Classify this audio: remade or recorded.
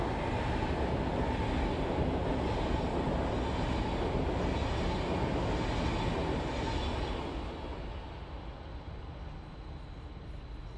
recorded